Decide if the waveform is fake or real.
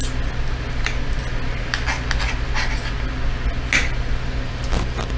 real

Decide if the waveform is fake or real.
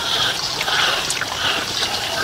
real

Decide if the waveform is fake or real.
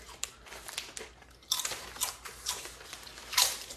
real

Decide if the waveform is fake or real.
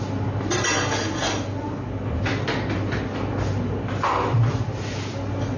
real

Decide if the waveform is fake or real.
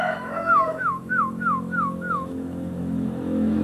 fake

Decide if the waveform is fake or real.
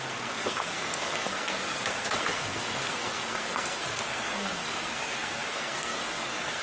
fake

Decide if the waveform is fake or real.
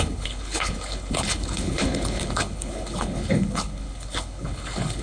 fake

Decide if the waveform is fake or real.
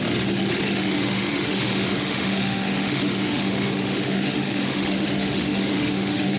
fake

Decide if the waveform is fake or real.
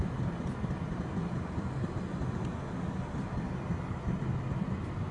real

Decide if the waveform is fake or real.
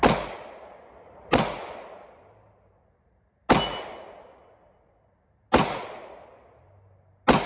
real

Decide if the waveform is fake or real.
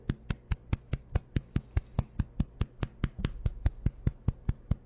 real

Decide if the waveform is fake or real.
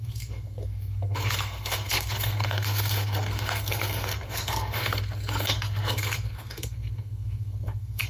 fake